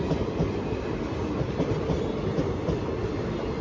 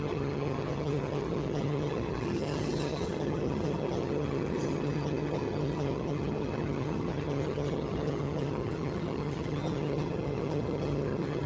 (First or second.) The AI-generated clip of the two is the second